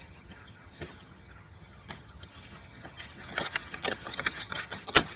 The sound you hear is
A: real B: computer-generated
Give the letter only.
B